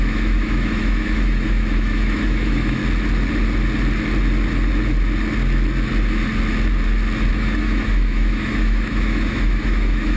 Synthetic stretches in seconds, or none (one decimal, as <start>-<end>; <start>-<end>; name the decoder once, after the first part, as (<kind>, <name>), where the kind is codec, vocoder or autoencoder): 0.0-2.8 (autoencoder, DAC-VAE); 7.3-10.2